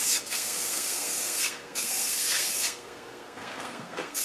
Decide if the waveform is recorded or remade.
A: remade